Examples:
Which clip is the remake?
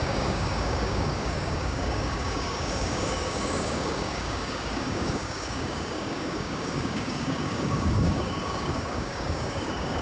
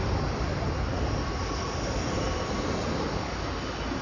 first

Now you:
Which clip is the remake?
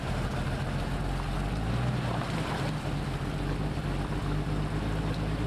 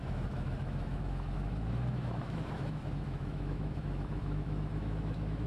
second